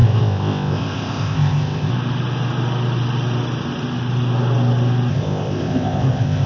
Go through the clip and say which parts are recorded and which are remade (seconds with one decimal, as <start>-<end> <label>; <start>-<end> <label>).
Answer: 0.0-1.9 remade; 1.9-5.1 recorded; 5.1-6.5 remade